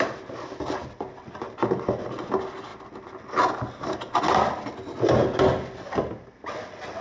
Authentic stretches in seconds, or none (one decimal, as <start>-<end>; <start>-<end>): 0.0-7.0